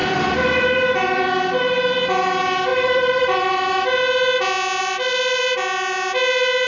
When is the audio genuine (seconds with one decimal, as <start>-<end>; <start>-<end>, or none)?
1.6-2.7; 4.0-4.8; 5.4-6.7